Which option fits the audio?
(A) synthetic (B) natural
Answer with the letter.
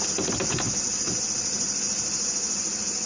B